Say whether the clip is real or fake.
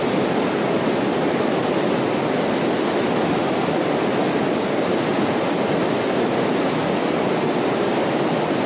real